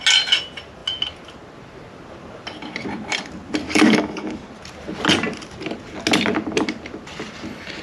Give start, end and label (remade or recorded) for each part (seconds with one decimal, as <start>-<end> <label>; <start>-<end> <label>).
0.0-3.6 recorded; 3.6-4.5 remade; 4.5-7.8 recorded

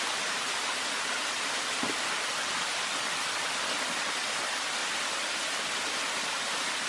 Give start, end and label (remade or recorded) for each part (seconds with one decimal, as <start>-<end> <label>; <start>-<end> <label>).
0.0-6.9 recorded

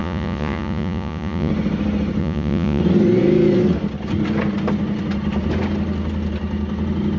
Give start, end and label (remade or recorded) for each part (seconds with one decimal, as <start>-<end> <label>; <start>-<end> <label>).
0.0-1.5 remade; 1.5-2.2 recorded; 2.2-2.8 remade; 2.8-7.2 recorded